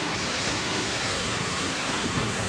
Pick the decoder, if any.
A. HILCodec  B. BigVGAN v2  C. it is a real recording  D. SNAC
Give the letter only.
D